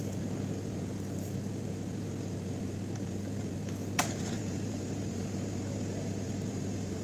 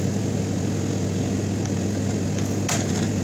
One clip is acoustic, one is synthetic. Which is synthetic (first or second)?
first